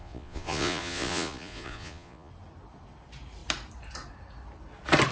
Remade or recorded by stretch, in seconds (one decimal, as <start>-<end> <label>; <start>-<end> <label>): 0.0-2.3 remade; 2.3-5.1 recorded